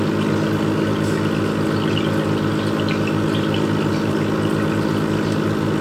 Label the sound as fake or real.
real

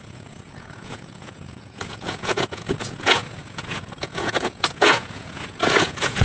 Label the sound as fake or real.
fake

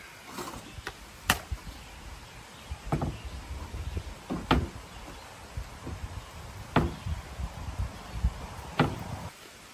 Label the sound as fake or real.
real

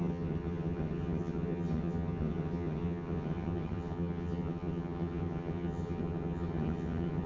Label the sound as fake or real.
fake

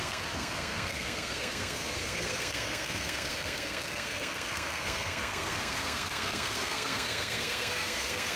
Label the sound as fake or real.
fake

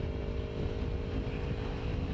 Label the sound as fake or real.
real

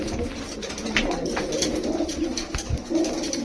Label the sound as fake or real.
real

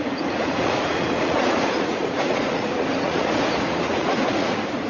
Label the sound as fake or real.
fake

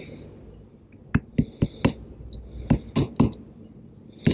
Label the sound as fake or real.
real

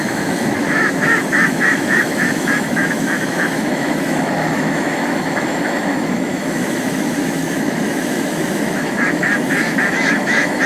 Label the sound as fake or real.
fake